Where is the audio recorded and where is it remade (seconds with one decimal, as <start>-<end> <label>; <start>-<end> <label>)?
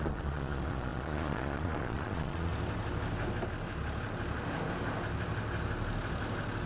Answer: 0.0-2.5 remade; 2.5-6.7 recorded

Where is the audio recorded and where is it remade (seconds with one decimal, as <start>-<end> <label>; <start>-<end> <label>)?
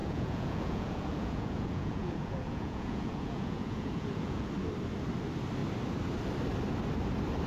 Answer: 0.0-4.5 remade; 4.5-7.5 recorded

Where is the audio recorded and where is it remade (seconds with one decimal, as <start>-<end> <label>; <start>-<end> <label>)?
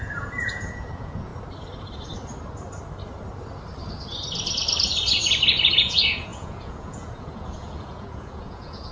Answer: 0.0-1.3 remade; 1.3-5.7 recorded; 5.7-8.9 remade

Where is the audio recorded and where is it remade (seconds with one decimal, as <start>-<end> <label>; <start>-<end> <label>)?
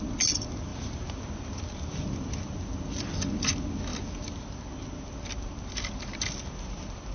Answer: 0.0-7.1 recorded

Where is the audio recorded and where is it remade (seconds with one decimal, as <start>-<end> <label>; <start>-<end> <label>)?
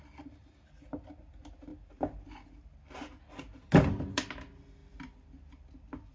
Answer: 0.0-6.1 recorded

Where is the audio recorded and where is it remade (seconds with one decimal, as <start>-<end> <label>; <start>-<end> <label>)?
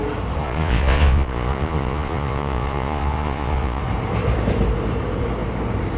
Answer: 0.0-0.4 recorded; 0.4-3.8 remade; 3.8-6.0 recorded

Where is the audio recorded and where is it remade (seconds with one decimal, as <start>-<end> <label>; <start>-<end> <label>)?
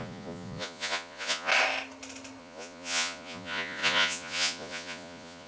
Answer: 0.0-1.5 remade; 1.5-2.4 recorded; 2.4-5.5 remade